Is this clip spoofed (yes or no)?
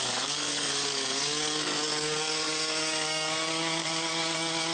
yes